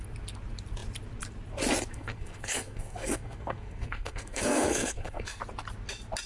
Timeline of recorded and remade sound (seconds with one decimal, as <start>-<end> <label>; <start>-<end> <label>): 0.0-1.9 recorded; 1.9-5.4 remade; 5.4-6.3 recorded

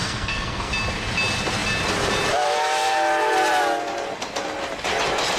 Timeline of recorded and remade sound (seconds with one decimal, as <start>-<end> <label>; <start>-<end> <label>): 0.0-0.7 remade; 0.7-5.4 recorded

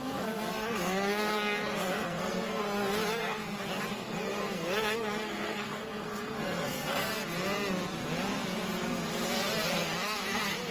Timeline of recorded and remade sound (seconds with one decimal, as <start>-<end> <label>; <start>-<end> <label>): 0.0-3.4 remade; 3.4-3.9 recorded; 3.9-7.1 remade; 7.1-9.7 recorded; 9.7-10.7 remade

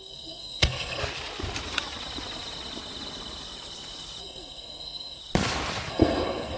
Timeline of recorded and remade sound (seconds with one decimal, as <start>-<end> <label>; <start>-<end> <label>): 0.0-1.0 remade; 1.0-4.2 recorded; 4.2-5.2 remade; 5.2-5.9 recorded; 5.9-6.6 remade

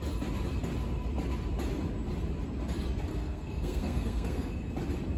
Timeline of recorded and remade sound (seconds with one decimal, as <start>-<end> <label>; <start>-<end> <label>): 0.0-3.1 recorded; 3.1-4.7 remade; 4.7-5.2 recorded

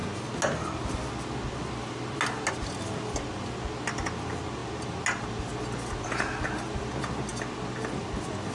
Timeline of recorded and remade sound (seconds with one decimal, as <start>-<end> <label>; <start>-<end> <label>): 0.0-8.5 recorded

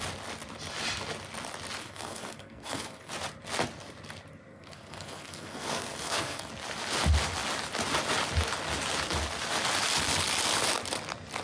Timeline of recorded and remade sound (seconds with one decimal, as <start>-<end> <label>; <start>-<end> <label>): 0.0-1.8 recorded; 1.8-3.1 remade; 3.1-4.5 recorded; 4.5-6.5 remade; 6.5-11.4 recorded

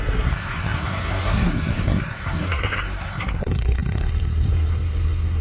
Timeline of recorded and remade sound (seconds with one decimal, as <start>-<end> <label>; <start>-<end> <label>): 0.0-5.4 remade